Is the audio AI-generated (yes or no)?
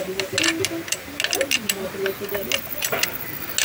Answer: no